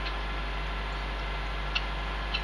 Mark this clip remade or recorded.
recorded